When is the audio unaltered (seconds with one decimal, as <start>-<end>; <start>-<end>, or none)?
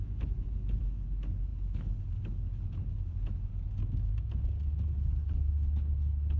3.5-5.0